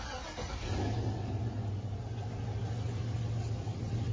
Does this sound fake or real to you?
real